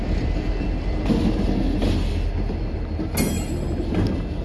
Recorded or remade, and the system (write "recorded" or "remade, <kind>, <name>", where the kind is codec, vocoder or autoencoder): recorded